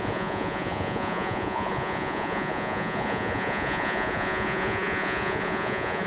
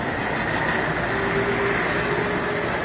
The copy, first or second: first